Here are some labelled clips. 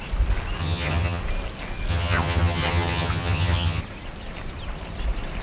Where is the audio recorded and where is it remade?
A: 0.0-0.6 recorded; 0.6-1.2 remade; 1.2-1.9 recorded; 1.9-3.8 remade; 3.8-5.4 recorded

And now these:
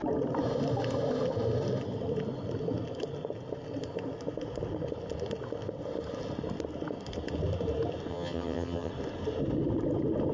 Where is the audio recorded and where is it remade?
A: 0.0-8.1 recorded; 8.1-8.9 remade; 8.9-10.3 recorded

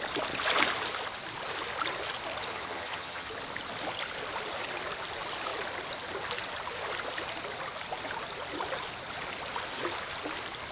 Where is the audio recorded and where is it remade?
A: 0.0-2.5 recorded; 2.5-3.3 remade; 3.3-10.7 recorded

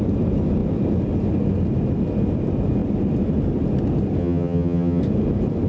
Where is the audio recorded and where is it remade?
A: 0.0-4.2 recorded; 4.2-5.0 remade; 5.0-5.7 recorded

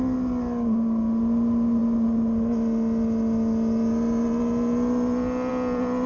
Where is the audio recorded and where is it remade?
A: 0.0-6.1 recorded

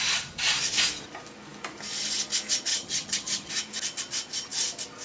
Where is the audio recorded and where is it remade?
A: 0.0-2.7 recorded; 2.7-3.5 remade; 3.5-5.0 recorded